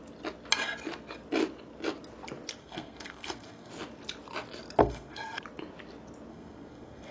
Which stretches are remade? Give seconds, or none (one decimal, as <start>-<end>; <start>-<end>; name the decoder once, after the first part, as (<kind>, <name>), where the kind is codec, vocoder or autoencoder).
2.6-3.7 (codec, SNAC); 4.8-5.4; 6.3-7.1